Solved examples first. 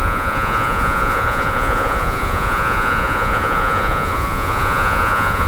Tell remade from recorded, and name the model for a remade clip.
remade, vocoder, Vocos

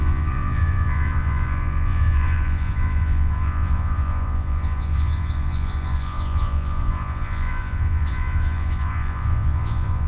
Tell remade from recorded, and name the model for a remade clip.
remade, vocoder, Vocos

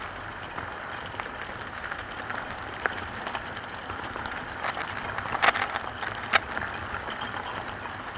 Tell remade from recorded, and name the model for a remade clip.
recorded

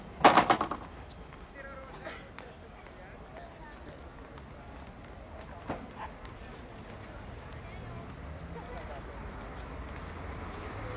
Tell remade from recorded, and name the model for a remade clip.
recorded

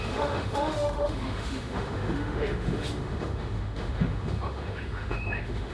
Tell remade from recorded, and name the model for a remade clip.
remade, autoencoder, DAC-VAE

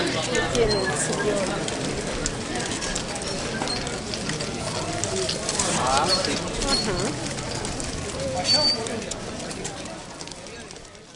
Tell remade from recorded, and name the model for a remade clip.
recorded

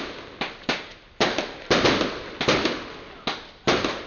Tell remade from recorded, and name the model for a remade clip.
recorded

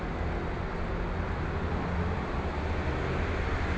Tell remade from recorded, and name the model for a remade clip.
recorded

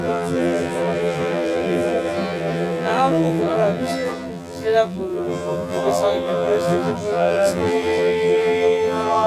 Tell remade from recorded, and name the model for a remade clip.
remade, vocoder, BigVGAN v2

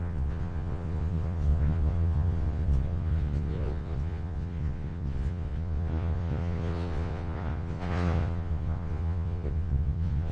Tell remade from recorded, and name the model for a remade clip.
remade, vocoder, Vocos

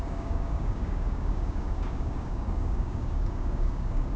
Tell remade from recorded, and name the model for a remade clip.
remade, codec, DAC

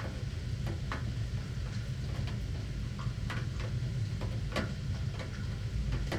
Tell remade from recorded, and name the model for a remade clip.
recorded